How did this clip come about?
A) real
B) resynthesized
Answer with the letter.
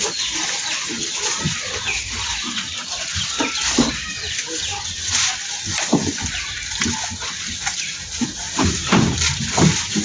A